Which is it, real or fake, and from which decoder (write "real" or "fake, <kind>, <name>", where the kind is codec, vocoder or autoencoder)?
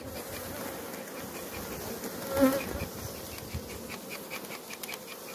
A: real